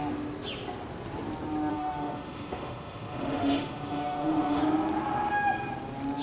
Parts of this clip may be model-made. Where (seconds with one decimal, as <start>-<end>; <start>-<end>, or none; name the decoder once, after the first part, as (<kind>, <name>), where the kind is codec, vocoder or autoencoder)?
1.7-4.6 (autoencoder, DAC-VAE)